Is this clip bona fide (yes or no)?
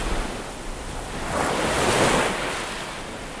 yes